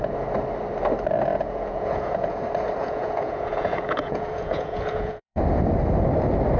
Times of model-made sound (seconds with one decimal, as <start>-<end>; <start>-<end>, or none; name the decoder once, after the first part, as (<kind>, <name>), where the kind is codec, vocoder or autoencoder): 1.3-2.4 (vocoder, Vocos); 2.8-5.4